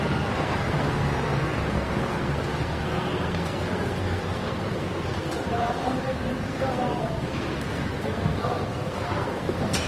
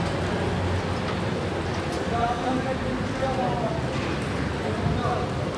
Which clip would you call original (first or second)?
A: second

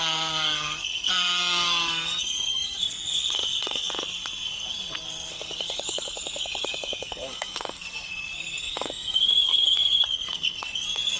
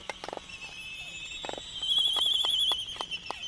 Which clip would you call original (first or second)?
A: second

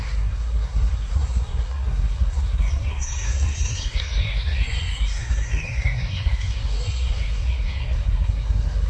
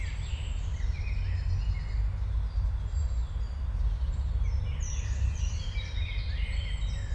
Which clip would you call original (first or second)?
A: second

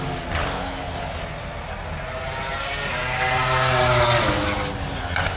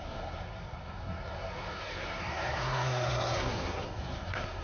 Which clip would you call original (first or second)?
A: first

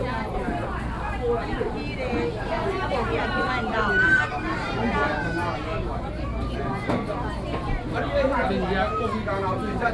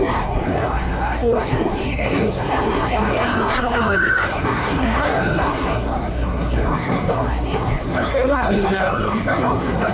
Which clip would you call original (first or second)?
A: first